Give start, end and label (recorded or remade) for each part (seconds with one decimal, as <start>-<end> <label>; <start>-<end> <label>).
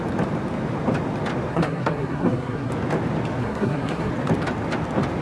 0.0-1.5 recorded; 1.5-2.7 remade; 2.7-3.4 recorded; 3.4-4.1 remade; 4.1-5.2 recorded